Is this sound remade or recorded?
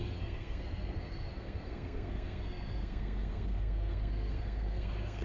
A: remade